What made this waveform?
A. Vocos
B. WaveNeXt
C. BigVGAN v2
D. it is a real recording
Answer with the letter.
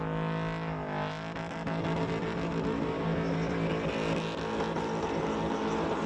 D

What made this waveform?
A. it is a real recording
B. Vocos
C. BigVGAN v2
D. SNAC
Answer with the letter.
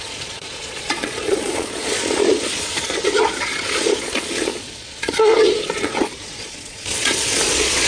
B